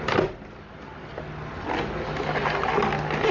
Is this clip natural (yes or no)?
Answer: yes